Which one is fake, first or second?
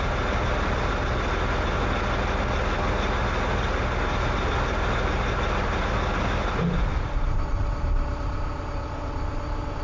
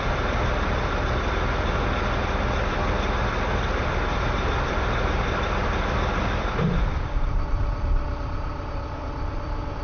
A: second